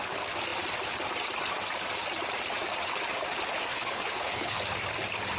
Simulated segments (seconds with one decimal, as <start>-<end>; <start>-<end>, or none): 3.7-4.6